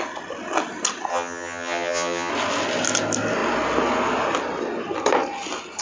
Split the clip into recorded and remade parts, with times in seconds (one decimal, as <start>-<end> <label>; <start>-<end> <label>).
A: 0.0-1.1 recorded; 1.1-2.3 remade; 2.3-5.8 recorded